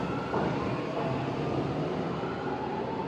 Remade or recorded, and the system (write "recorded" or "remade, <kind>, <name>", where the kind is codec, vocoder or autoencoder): recorded